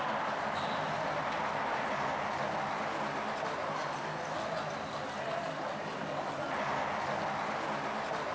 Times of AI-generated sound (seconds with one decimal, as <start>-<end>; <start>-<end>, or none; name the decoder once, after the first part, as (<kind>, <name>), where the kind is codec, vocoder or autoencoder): none

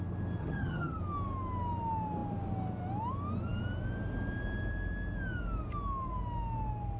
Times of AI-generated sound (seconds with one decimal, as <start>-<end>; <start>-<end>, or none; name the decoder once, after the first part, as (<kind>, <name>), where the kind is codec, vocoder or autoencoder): 0.4-1.0 (vocoder, HiFi-GAN)

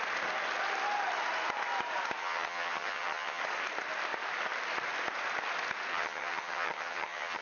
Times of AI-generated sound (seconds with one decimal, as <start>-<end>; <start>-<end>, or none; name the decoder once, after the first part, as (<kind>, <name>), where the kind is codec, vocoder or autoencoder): 2.2-3.4 (vocoder, HiFi-GAN); 5.9-7.4

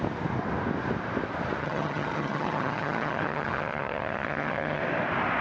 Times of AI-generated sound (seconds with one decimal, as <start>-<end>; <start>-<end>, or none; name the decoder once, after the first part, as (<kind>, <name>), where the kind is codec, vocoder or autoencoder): 1.6-4.8 (vocoder, HiFi-GAN)

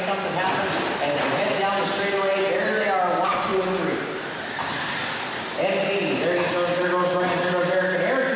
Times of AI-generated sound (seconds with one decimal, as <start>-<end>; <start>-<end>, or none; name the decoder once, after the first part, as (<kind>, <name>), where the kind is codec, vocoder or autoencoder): none

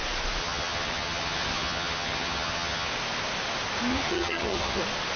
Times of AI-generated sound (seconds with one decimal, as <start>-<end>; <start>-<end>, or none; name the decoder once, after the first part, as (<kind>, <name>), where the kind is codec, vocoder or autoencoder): 0.4-2.9 (vocoder, HiFi-GAN); 3.9-4.8

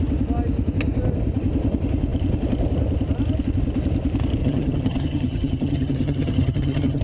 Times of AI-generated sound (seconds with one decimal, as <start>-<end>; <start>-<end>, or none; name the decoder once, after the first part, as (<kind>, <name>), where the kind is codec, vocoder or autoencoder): 4.4-7.0 (vocoder, HiFi-GAN)

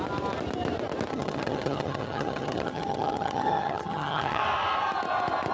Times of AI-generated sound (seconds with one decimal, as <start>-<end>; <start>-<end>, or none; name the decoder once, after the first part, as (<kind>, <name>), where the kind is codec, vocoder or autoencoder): 1.1-4.4 (vocoder, HiFi-GAN)